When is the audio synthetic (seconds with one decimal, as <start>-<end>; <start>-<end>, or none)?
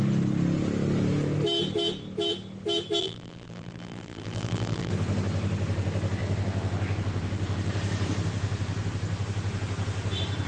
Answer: 3.0-4.9